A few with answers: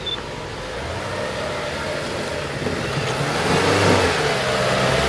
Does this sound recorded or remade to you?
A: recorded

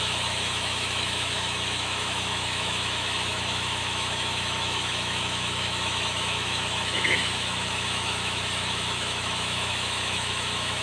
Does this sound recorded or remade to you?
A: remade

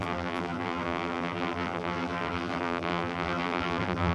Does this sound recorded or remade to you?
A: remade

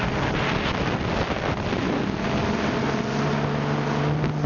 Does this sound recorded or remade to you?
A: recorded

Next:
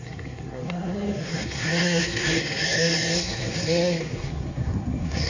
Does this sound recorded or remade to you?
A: remade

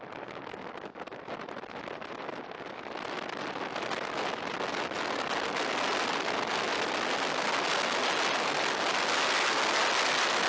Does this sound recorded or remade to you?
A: recorded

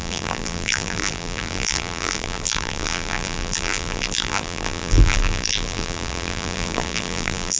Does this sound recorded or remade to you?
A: remade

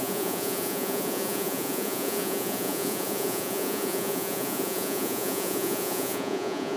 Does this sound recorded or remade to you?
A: remade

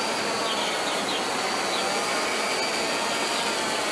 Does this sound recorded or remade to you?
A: recorded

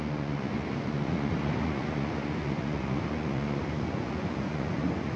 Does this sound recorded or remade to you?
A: remade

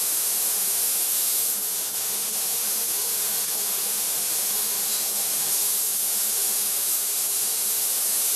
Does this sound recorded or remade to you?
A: remade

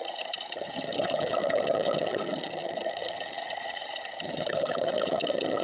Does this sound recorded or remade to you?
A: remade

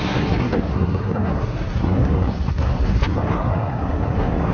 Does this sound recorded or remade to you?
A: remade